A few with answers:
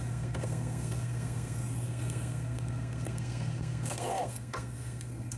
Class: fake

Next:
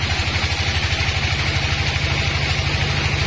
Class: real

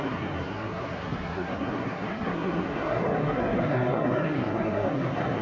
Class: fake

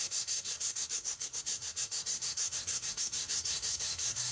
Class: fake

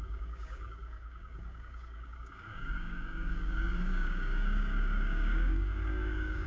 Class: fake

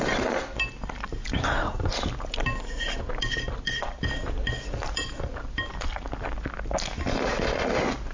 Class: real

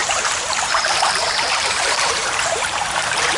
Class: fake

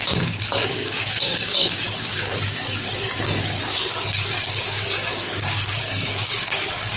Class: fake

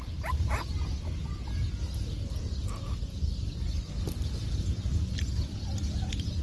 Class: real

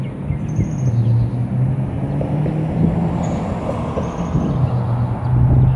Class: real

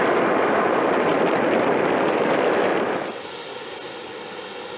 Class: real